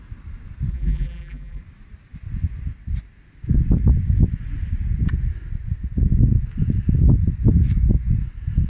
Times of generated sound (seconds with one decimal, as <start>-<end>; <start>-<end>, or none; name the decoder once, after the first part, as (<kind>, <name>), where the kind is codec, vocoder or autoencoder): 0.7-1.6 (vocoder, BigVGAN v2)